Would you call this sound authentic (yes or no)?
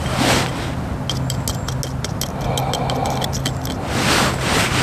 yes